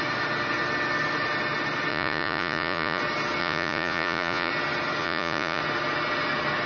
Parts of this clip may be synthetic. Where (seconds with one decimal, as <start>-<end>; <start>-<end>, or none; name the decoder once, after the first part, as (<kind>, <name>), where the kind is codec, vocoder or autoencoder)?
1.9-3.0 (vocoder, Vocos); 3.4-4.5; 5.0-5.6